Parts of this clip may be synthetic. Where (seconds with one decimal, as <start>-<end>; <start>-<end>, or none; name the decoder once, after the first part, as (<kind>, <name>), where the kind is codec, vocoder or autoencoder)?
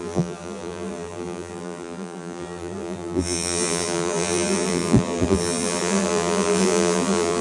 0.0-7.4 (vocoder, BigVGAN v2)